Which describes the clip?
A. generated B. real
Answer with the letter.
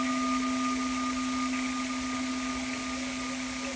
B